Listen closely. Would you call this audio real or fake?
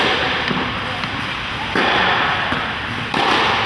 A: real